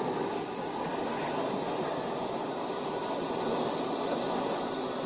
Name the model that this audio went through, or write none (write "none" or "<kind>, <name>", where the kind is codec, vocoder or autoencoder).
none